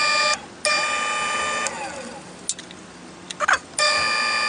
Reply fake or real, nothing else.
real